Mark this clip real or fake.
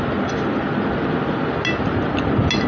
real